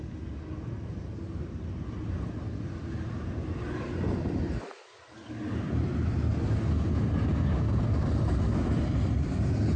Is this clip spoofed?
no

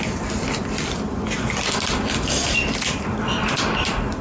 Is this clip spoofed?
no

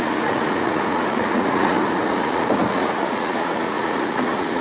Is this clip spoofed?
yes